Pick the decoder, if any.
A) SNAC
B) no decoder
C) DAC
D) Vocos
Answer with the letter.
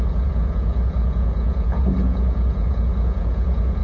D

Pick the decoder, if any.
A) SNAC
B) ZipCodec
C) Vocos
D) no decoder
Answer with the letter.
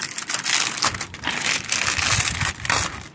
D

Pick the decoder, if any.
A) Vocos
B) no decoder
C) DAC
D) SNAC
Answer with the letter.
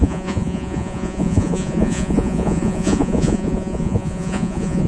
A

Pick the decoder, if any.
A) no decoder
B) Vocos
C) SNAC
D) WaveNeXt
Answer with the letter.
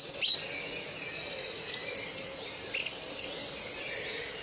A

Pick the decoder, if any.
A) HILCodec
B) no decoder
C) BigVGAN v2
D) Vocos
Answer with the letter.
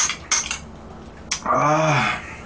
B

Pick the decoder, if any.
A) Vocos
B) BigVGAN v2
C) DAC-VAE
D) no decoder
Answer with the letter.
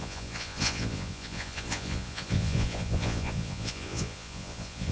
A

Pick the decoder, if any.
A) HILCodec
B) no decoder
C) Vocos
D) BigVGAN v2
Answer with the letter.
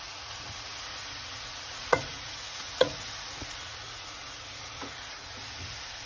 C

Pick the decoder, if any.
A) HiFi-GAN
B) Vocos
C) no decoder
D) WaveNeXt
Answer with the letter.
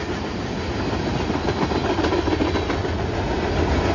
C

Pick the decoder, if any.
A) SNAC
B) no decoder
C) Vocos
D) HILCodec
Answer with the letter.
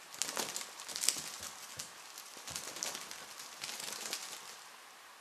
B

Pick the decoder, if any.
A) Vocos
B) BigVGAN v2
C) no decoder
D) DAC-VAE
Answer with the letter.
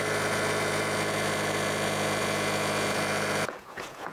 A